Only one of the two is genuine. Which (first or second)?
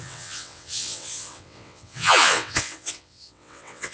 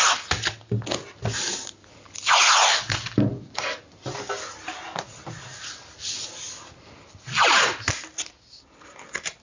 second